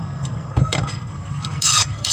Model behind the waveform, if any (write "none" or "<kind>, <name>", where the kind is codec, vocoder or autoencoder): codec, SNAC